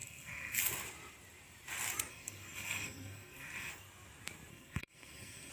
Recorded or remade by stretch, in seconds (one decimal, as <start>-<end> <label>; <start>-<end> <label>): 0.0-0.6 remade; 0.6-2.1 recorded; 2.1-3.7 remade; 3.7-4.5 recorded; 4.5-5.5 remade